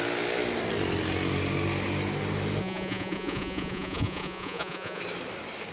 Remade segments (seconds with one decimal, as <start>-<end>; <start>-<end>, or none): 2.6-5.0